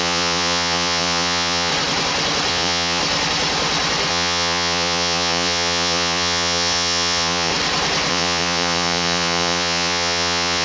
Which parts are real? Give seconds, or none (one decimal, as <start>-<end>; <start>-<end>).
1.7-2.5; 3.0-4.1; 7.5-8.1